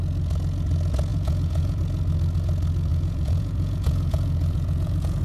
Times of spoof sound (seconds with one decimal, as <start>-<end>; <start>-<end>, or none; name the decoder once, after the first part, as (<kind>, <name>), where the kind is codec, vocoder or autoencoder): 1.1-1.8 (vocoder, Vocos); 2.9-5.2

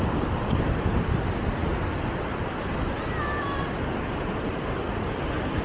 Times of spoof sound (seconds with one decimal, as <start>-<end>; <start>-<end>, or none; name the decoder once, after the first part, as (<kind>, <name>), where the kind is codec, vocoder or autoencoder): none